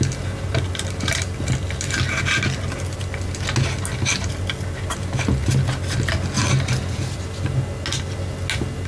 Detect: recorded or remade recorded